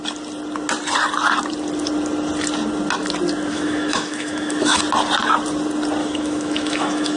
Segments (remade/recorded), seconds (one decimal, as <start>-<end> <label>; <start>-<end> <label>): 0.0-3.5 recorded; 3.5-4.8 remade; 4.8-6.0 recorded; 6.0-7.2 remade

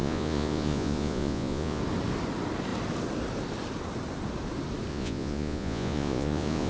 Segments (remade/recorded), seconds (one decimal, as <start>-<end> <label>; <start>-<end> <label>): 0.0-1.8 remade; 1.8-4.9 recorded; 4.9-6.7 remade

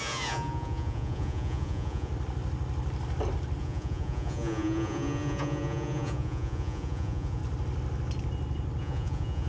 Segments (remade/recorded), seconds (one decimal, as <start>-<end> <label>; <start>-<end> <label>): 0.0-2.1 remade; 2.1-3.6 recorded; 3.6-7.4 remade; 7.4-8.8 recorded; 8.8-9.5 remade